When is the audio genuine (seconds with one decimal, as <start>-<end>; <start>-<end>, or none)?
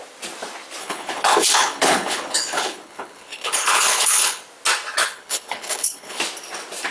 0.0-0.8; 4.4-5.0; 6.2-6.9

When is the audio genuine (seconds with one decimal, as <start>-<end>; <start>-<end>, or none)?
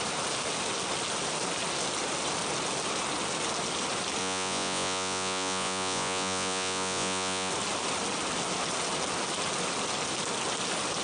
0.0-4.2; 7.5-11.0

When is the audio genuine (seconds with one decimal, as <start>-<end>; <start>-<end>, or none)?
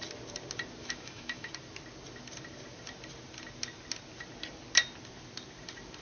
0.0-0.8; 1.5-6.0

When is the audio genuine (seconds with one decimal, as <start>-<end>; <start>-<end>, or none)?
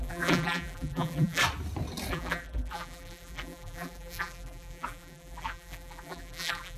1.4-2.1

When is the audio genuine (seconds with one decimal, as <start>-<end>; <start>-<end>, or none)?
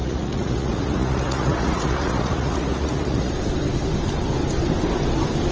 3.3-5.5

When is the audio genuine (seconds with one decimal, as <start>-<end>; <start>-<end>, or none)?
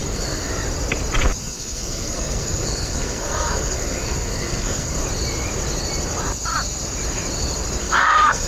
0.5-1.4; 5.0-7.8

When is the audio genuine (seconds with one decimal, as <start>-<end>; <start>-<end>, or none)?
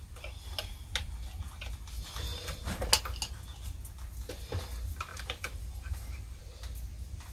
0.0-2.3; 2.9-5.1; 6.4-7.3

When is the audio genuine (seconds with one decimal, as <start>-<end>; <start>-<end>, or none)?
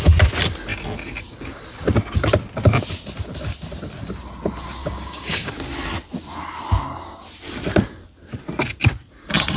0.0-4.8; 5.5-9.6